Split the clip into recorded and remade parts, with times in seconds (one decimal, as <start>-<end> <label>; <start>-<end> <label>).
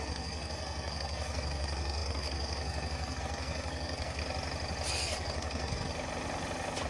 0.0-4.2 remade; 4.2-4.9 recorded; 4.9-5.9 remade; 5.9-6.9 recorded